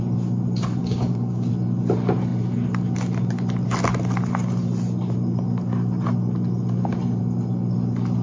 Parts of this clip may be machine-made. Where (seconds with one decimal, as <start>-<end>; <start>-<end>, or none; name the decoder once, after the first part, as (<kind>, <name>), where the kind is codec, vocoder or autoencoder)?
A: 0.8-1.5 (codec, DAC)